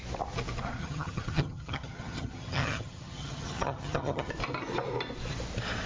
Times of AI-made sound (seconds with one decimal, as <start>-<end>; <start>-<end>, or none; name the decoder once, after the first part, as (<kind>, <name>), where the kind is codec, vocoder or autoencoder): 0.8-4.3 (vocoder, HiFi-GAN)